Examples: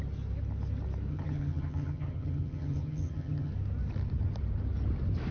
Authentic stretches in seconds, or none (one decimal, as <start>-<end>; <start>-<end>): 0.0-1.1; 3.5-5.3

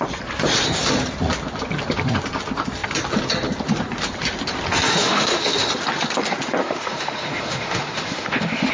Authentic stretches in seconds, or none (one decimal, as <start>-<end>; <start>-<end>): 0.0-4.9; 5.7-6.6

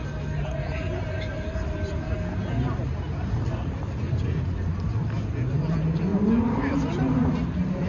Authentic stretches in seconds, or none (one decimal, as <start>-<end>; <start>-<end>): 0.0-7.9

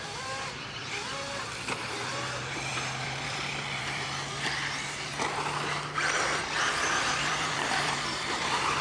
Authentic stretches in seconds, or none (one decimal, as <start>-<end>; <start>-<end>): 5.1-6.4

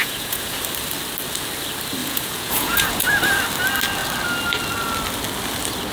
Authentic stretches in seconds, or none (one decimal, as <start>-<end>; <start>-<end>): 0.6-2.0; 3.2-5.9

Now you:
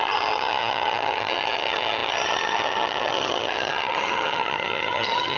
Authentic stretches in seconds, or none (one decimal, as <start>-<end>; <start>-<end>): none